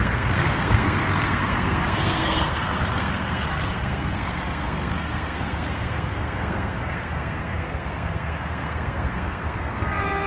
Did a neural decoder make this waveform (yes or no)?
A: yes